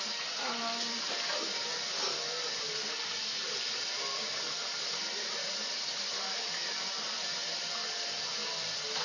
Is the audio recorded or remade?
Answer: recorded